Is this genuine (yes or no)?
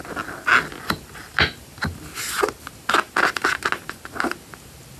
yes